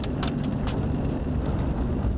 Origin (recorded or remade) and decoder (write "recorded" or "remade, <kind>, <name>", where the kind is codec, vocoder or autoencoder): recorded